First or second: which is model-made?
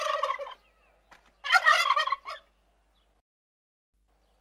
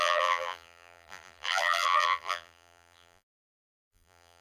second